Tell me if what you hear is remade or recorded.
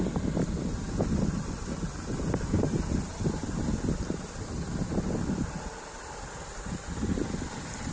recorded